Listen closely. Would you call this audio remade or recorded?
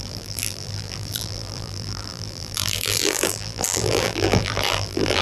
remade